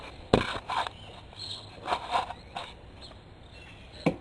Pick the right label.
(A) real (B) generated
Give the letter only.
A